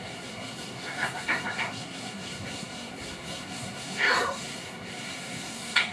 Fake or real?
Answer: fake